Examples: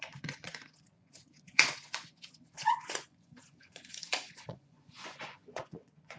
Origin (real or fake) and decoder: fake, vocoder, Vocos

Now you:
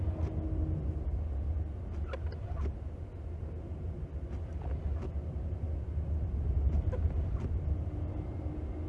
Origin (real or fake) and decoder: real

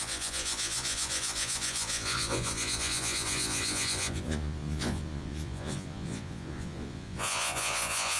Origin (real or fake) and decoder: fake, vocoder, Vocos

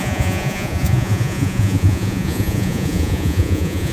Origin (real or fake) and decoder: fake, vocoder, Vocos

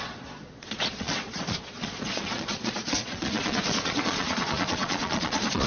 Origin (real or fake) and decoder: fake, vocoder, Vocos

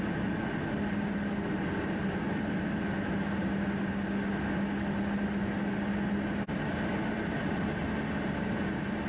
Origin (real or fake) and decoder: real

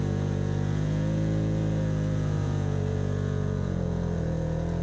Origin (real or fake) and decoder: fake, vocoder, Vocos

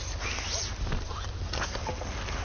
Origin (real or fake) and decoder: real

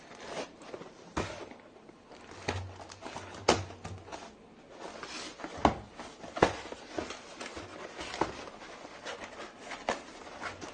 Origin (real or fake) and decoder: real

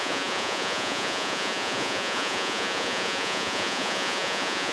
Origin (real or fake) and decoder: fake, vocoder, Vocos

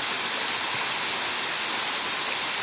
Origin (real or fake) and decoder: real